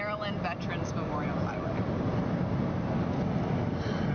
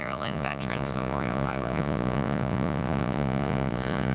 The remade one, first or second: second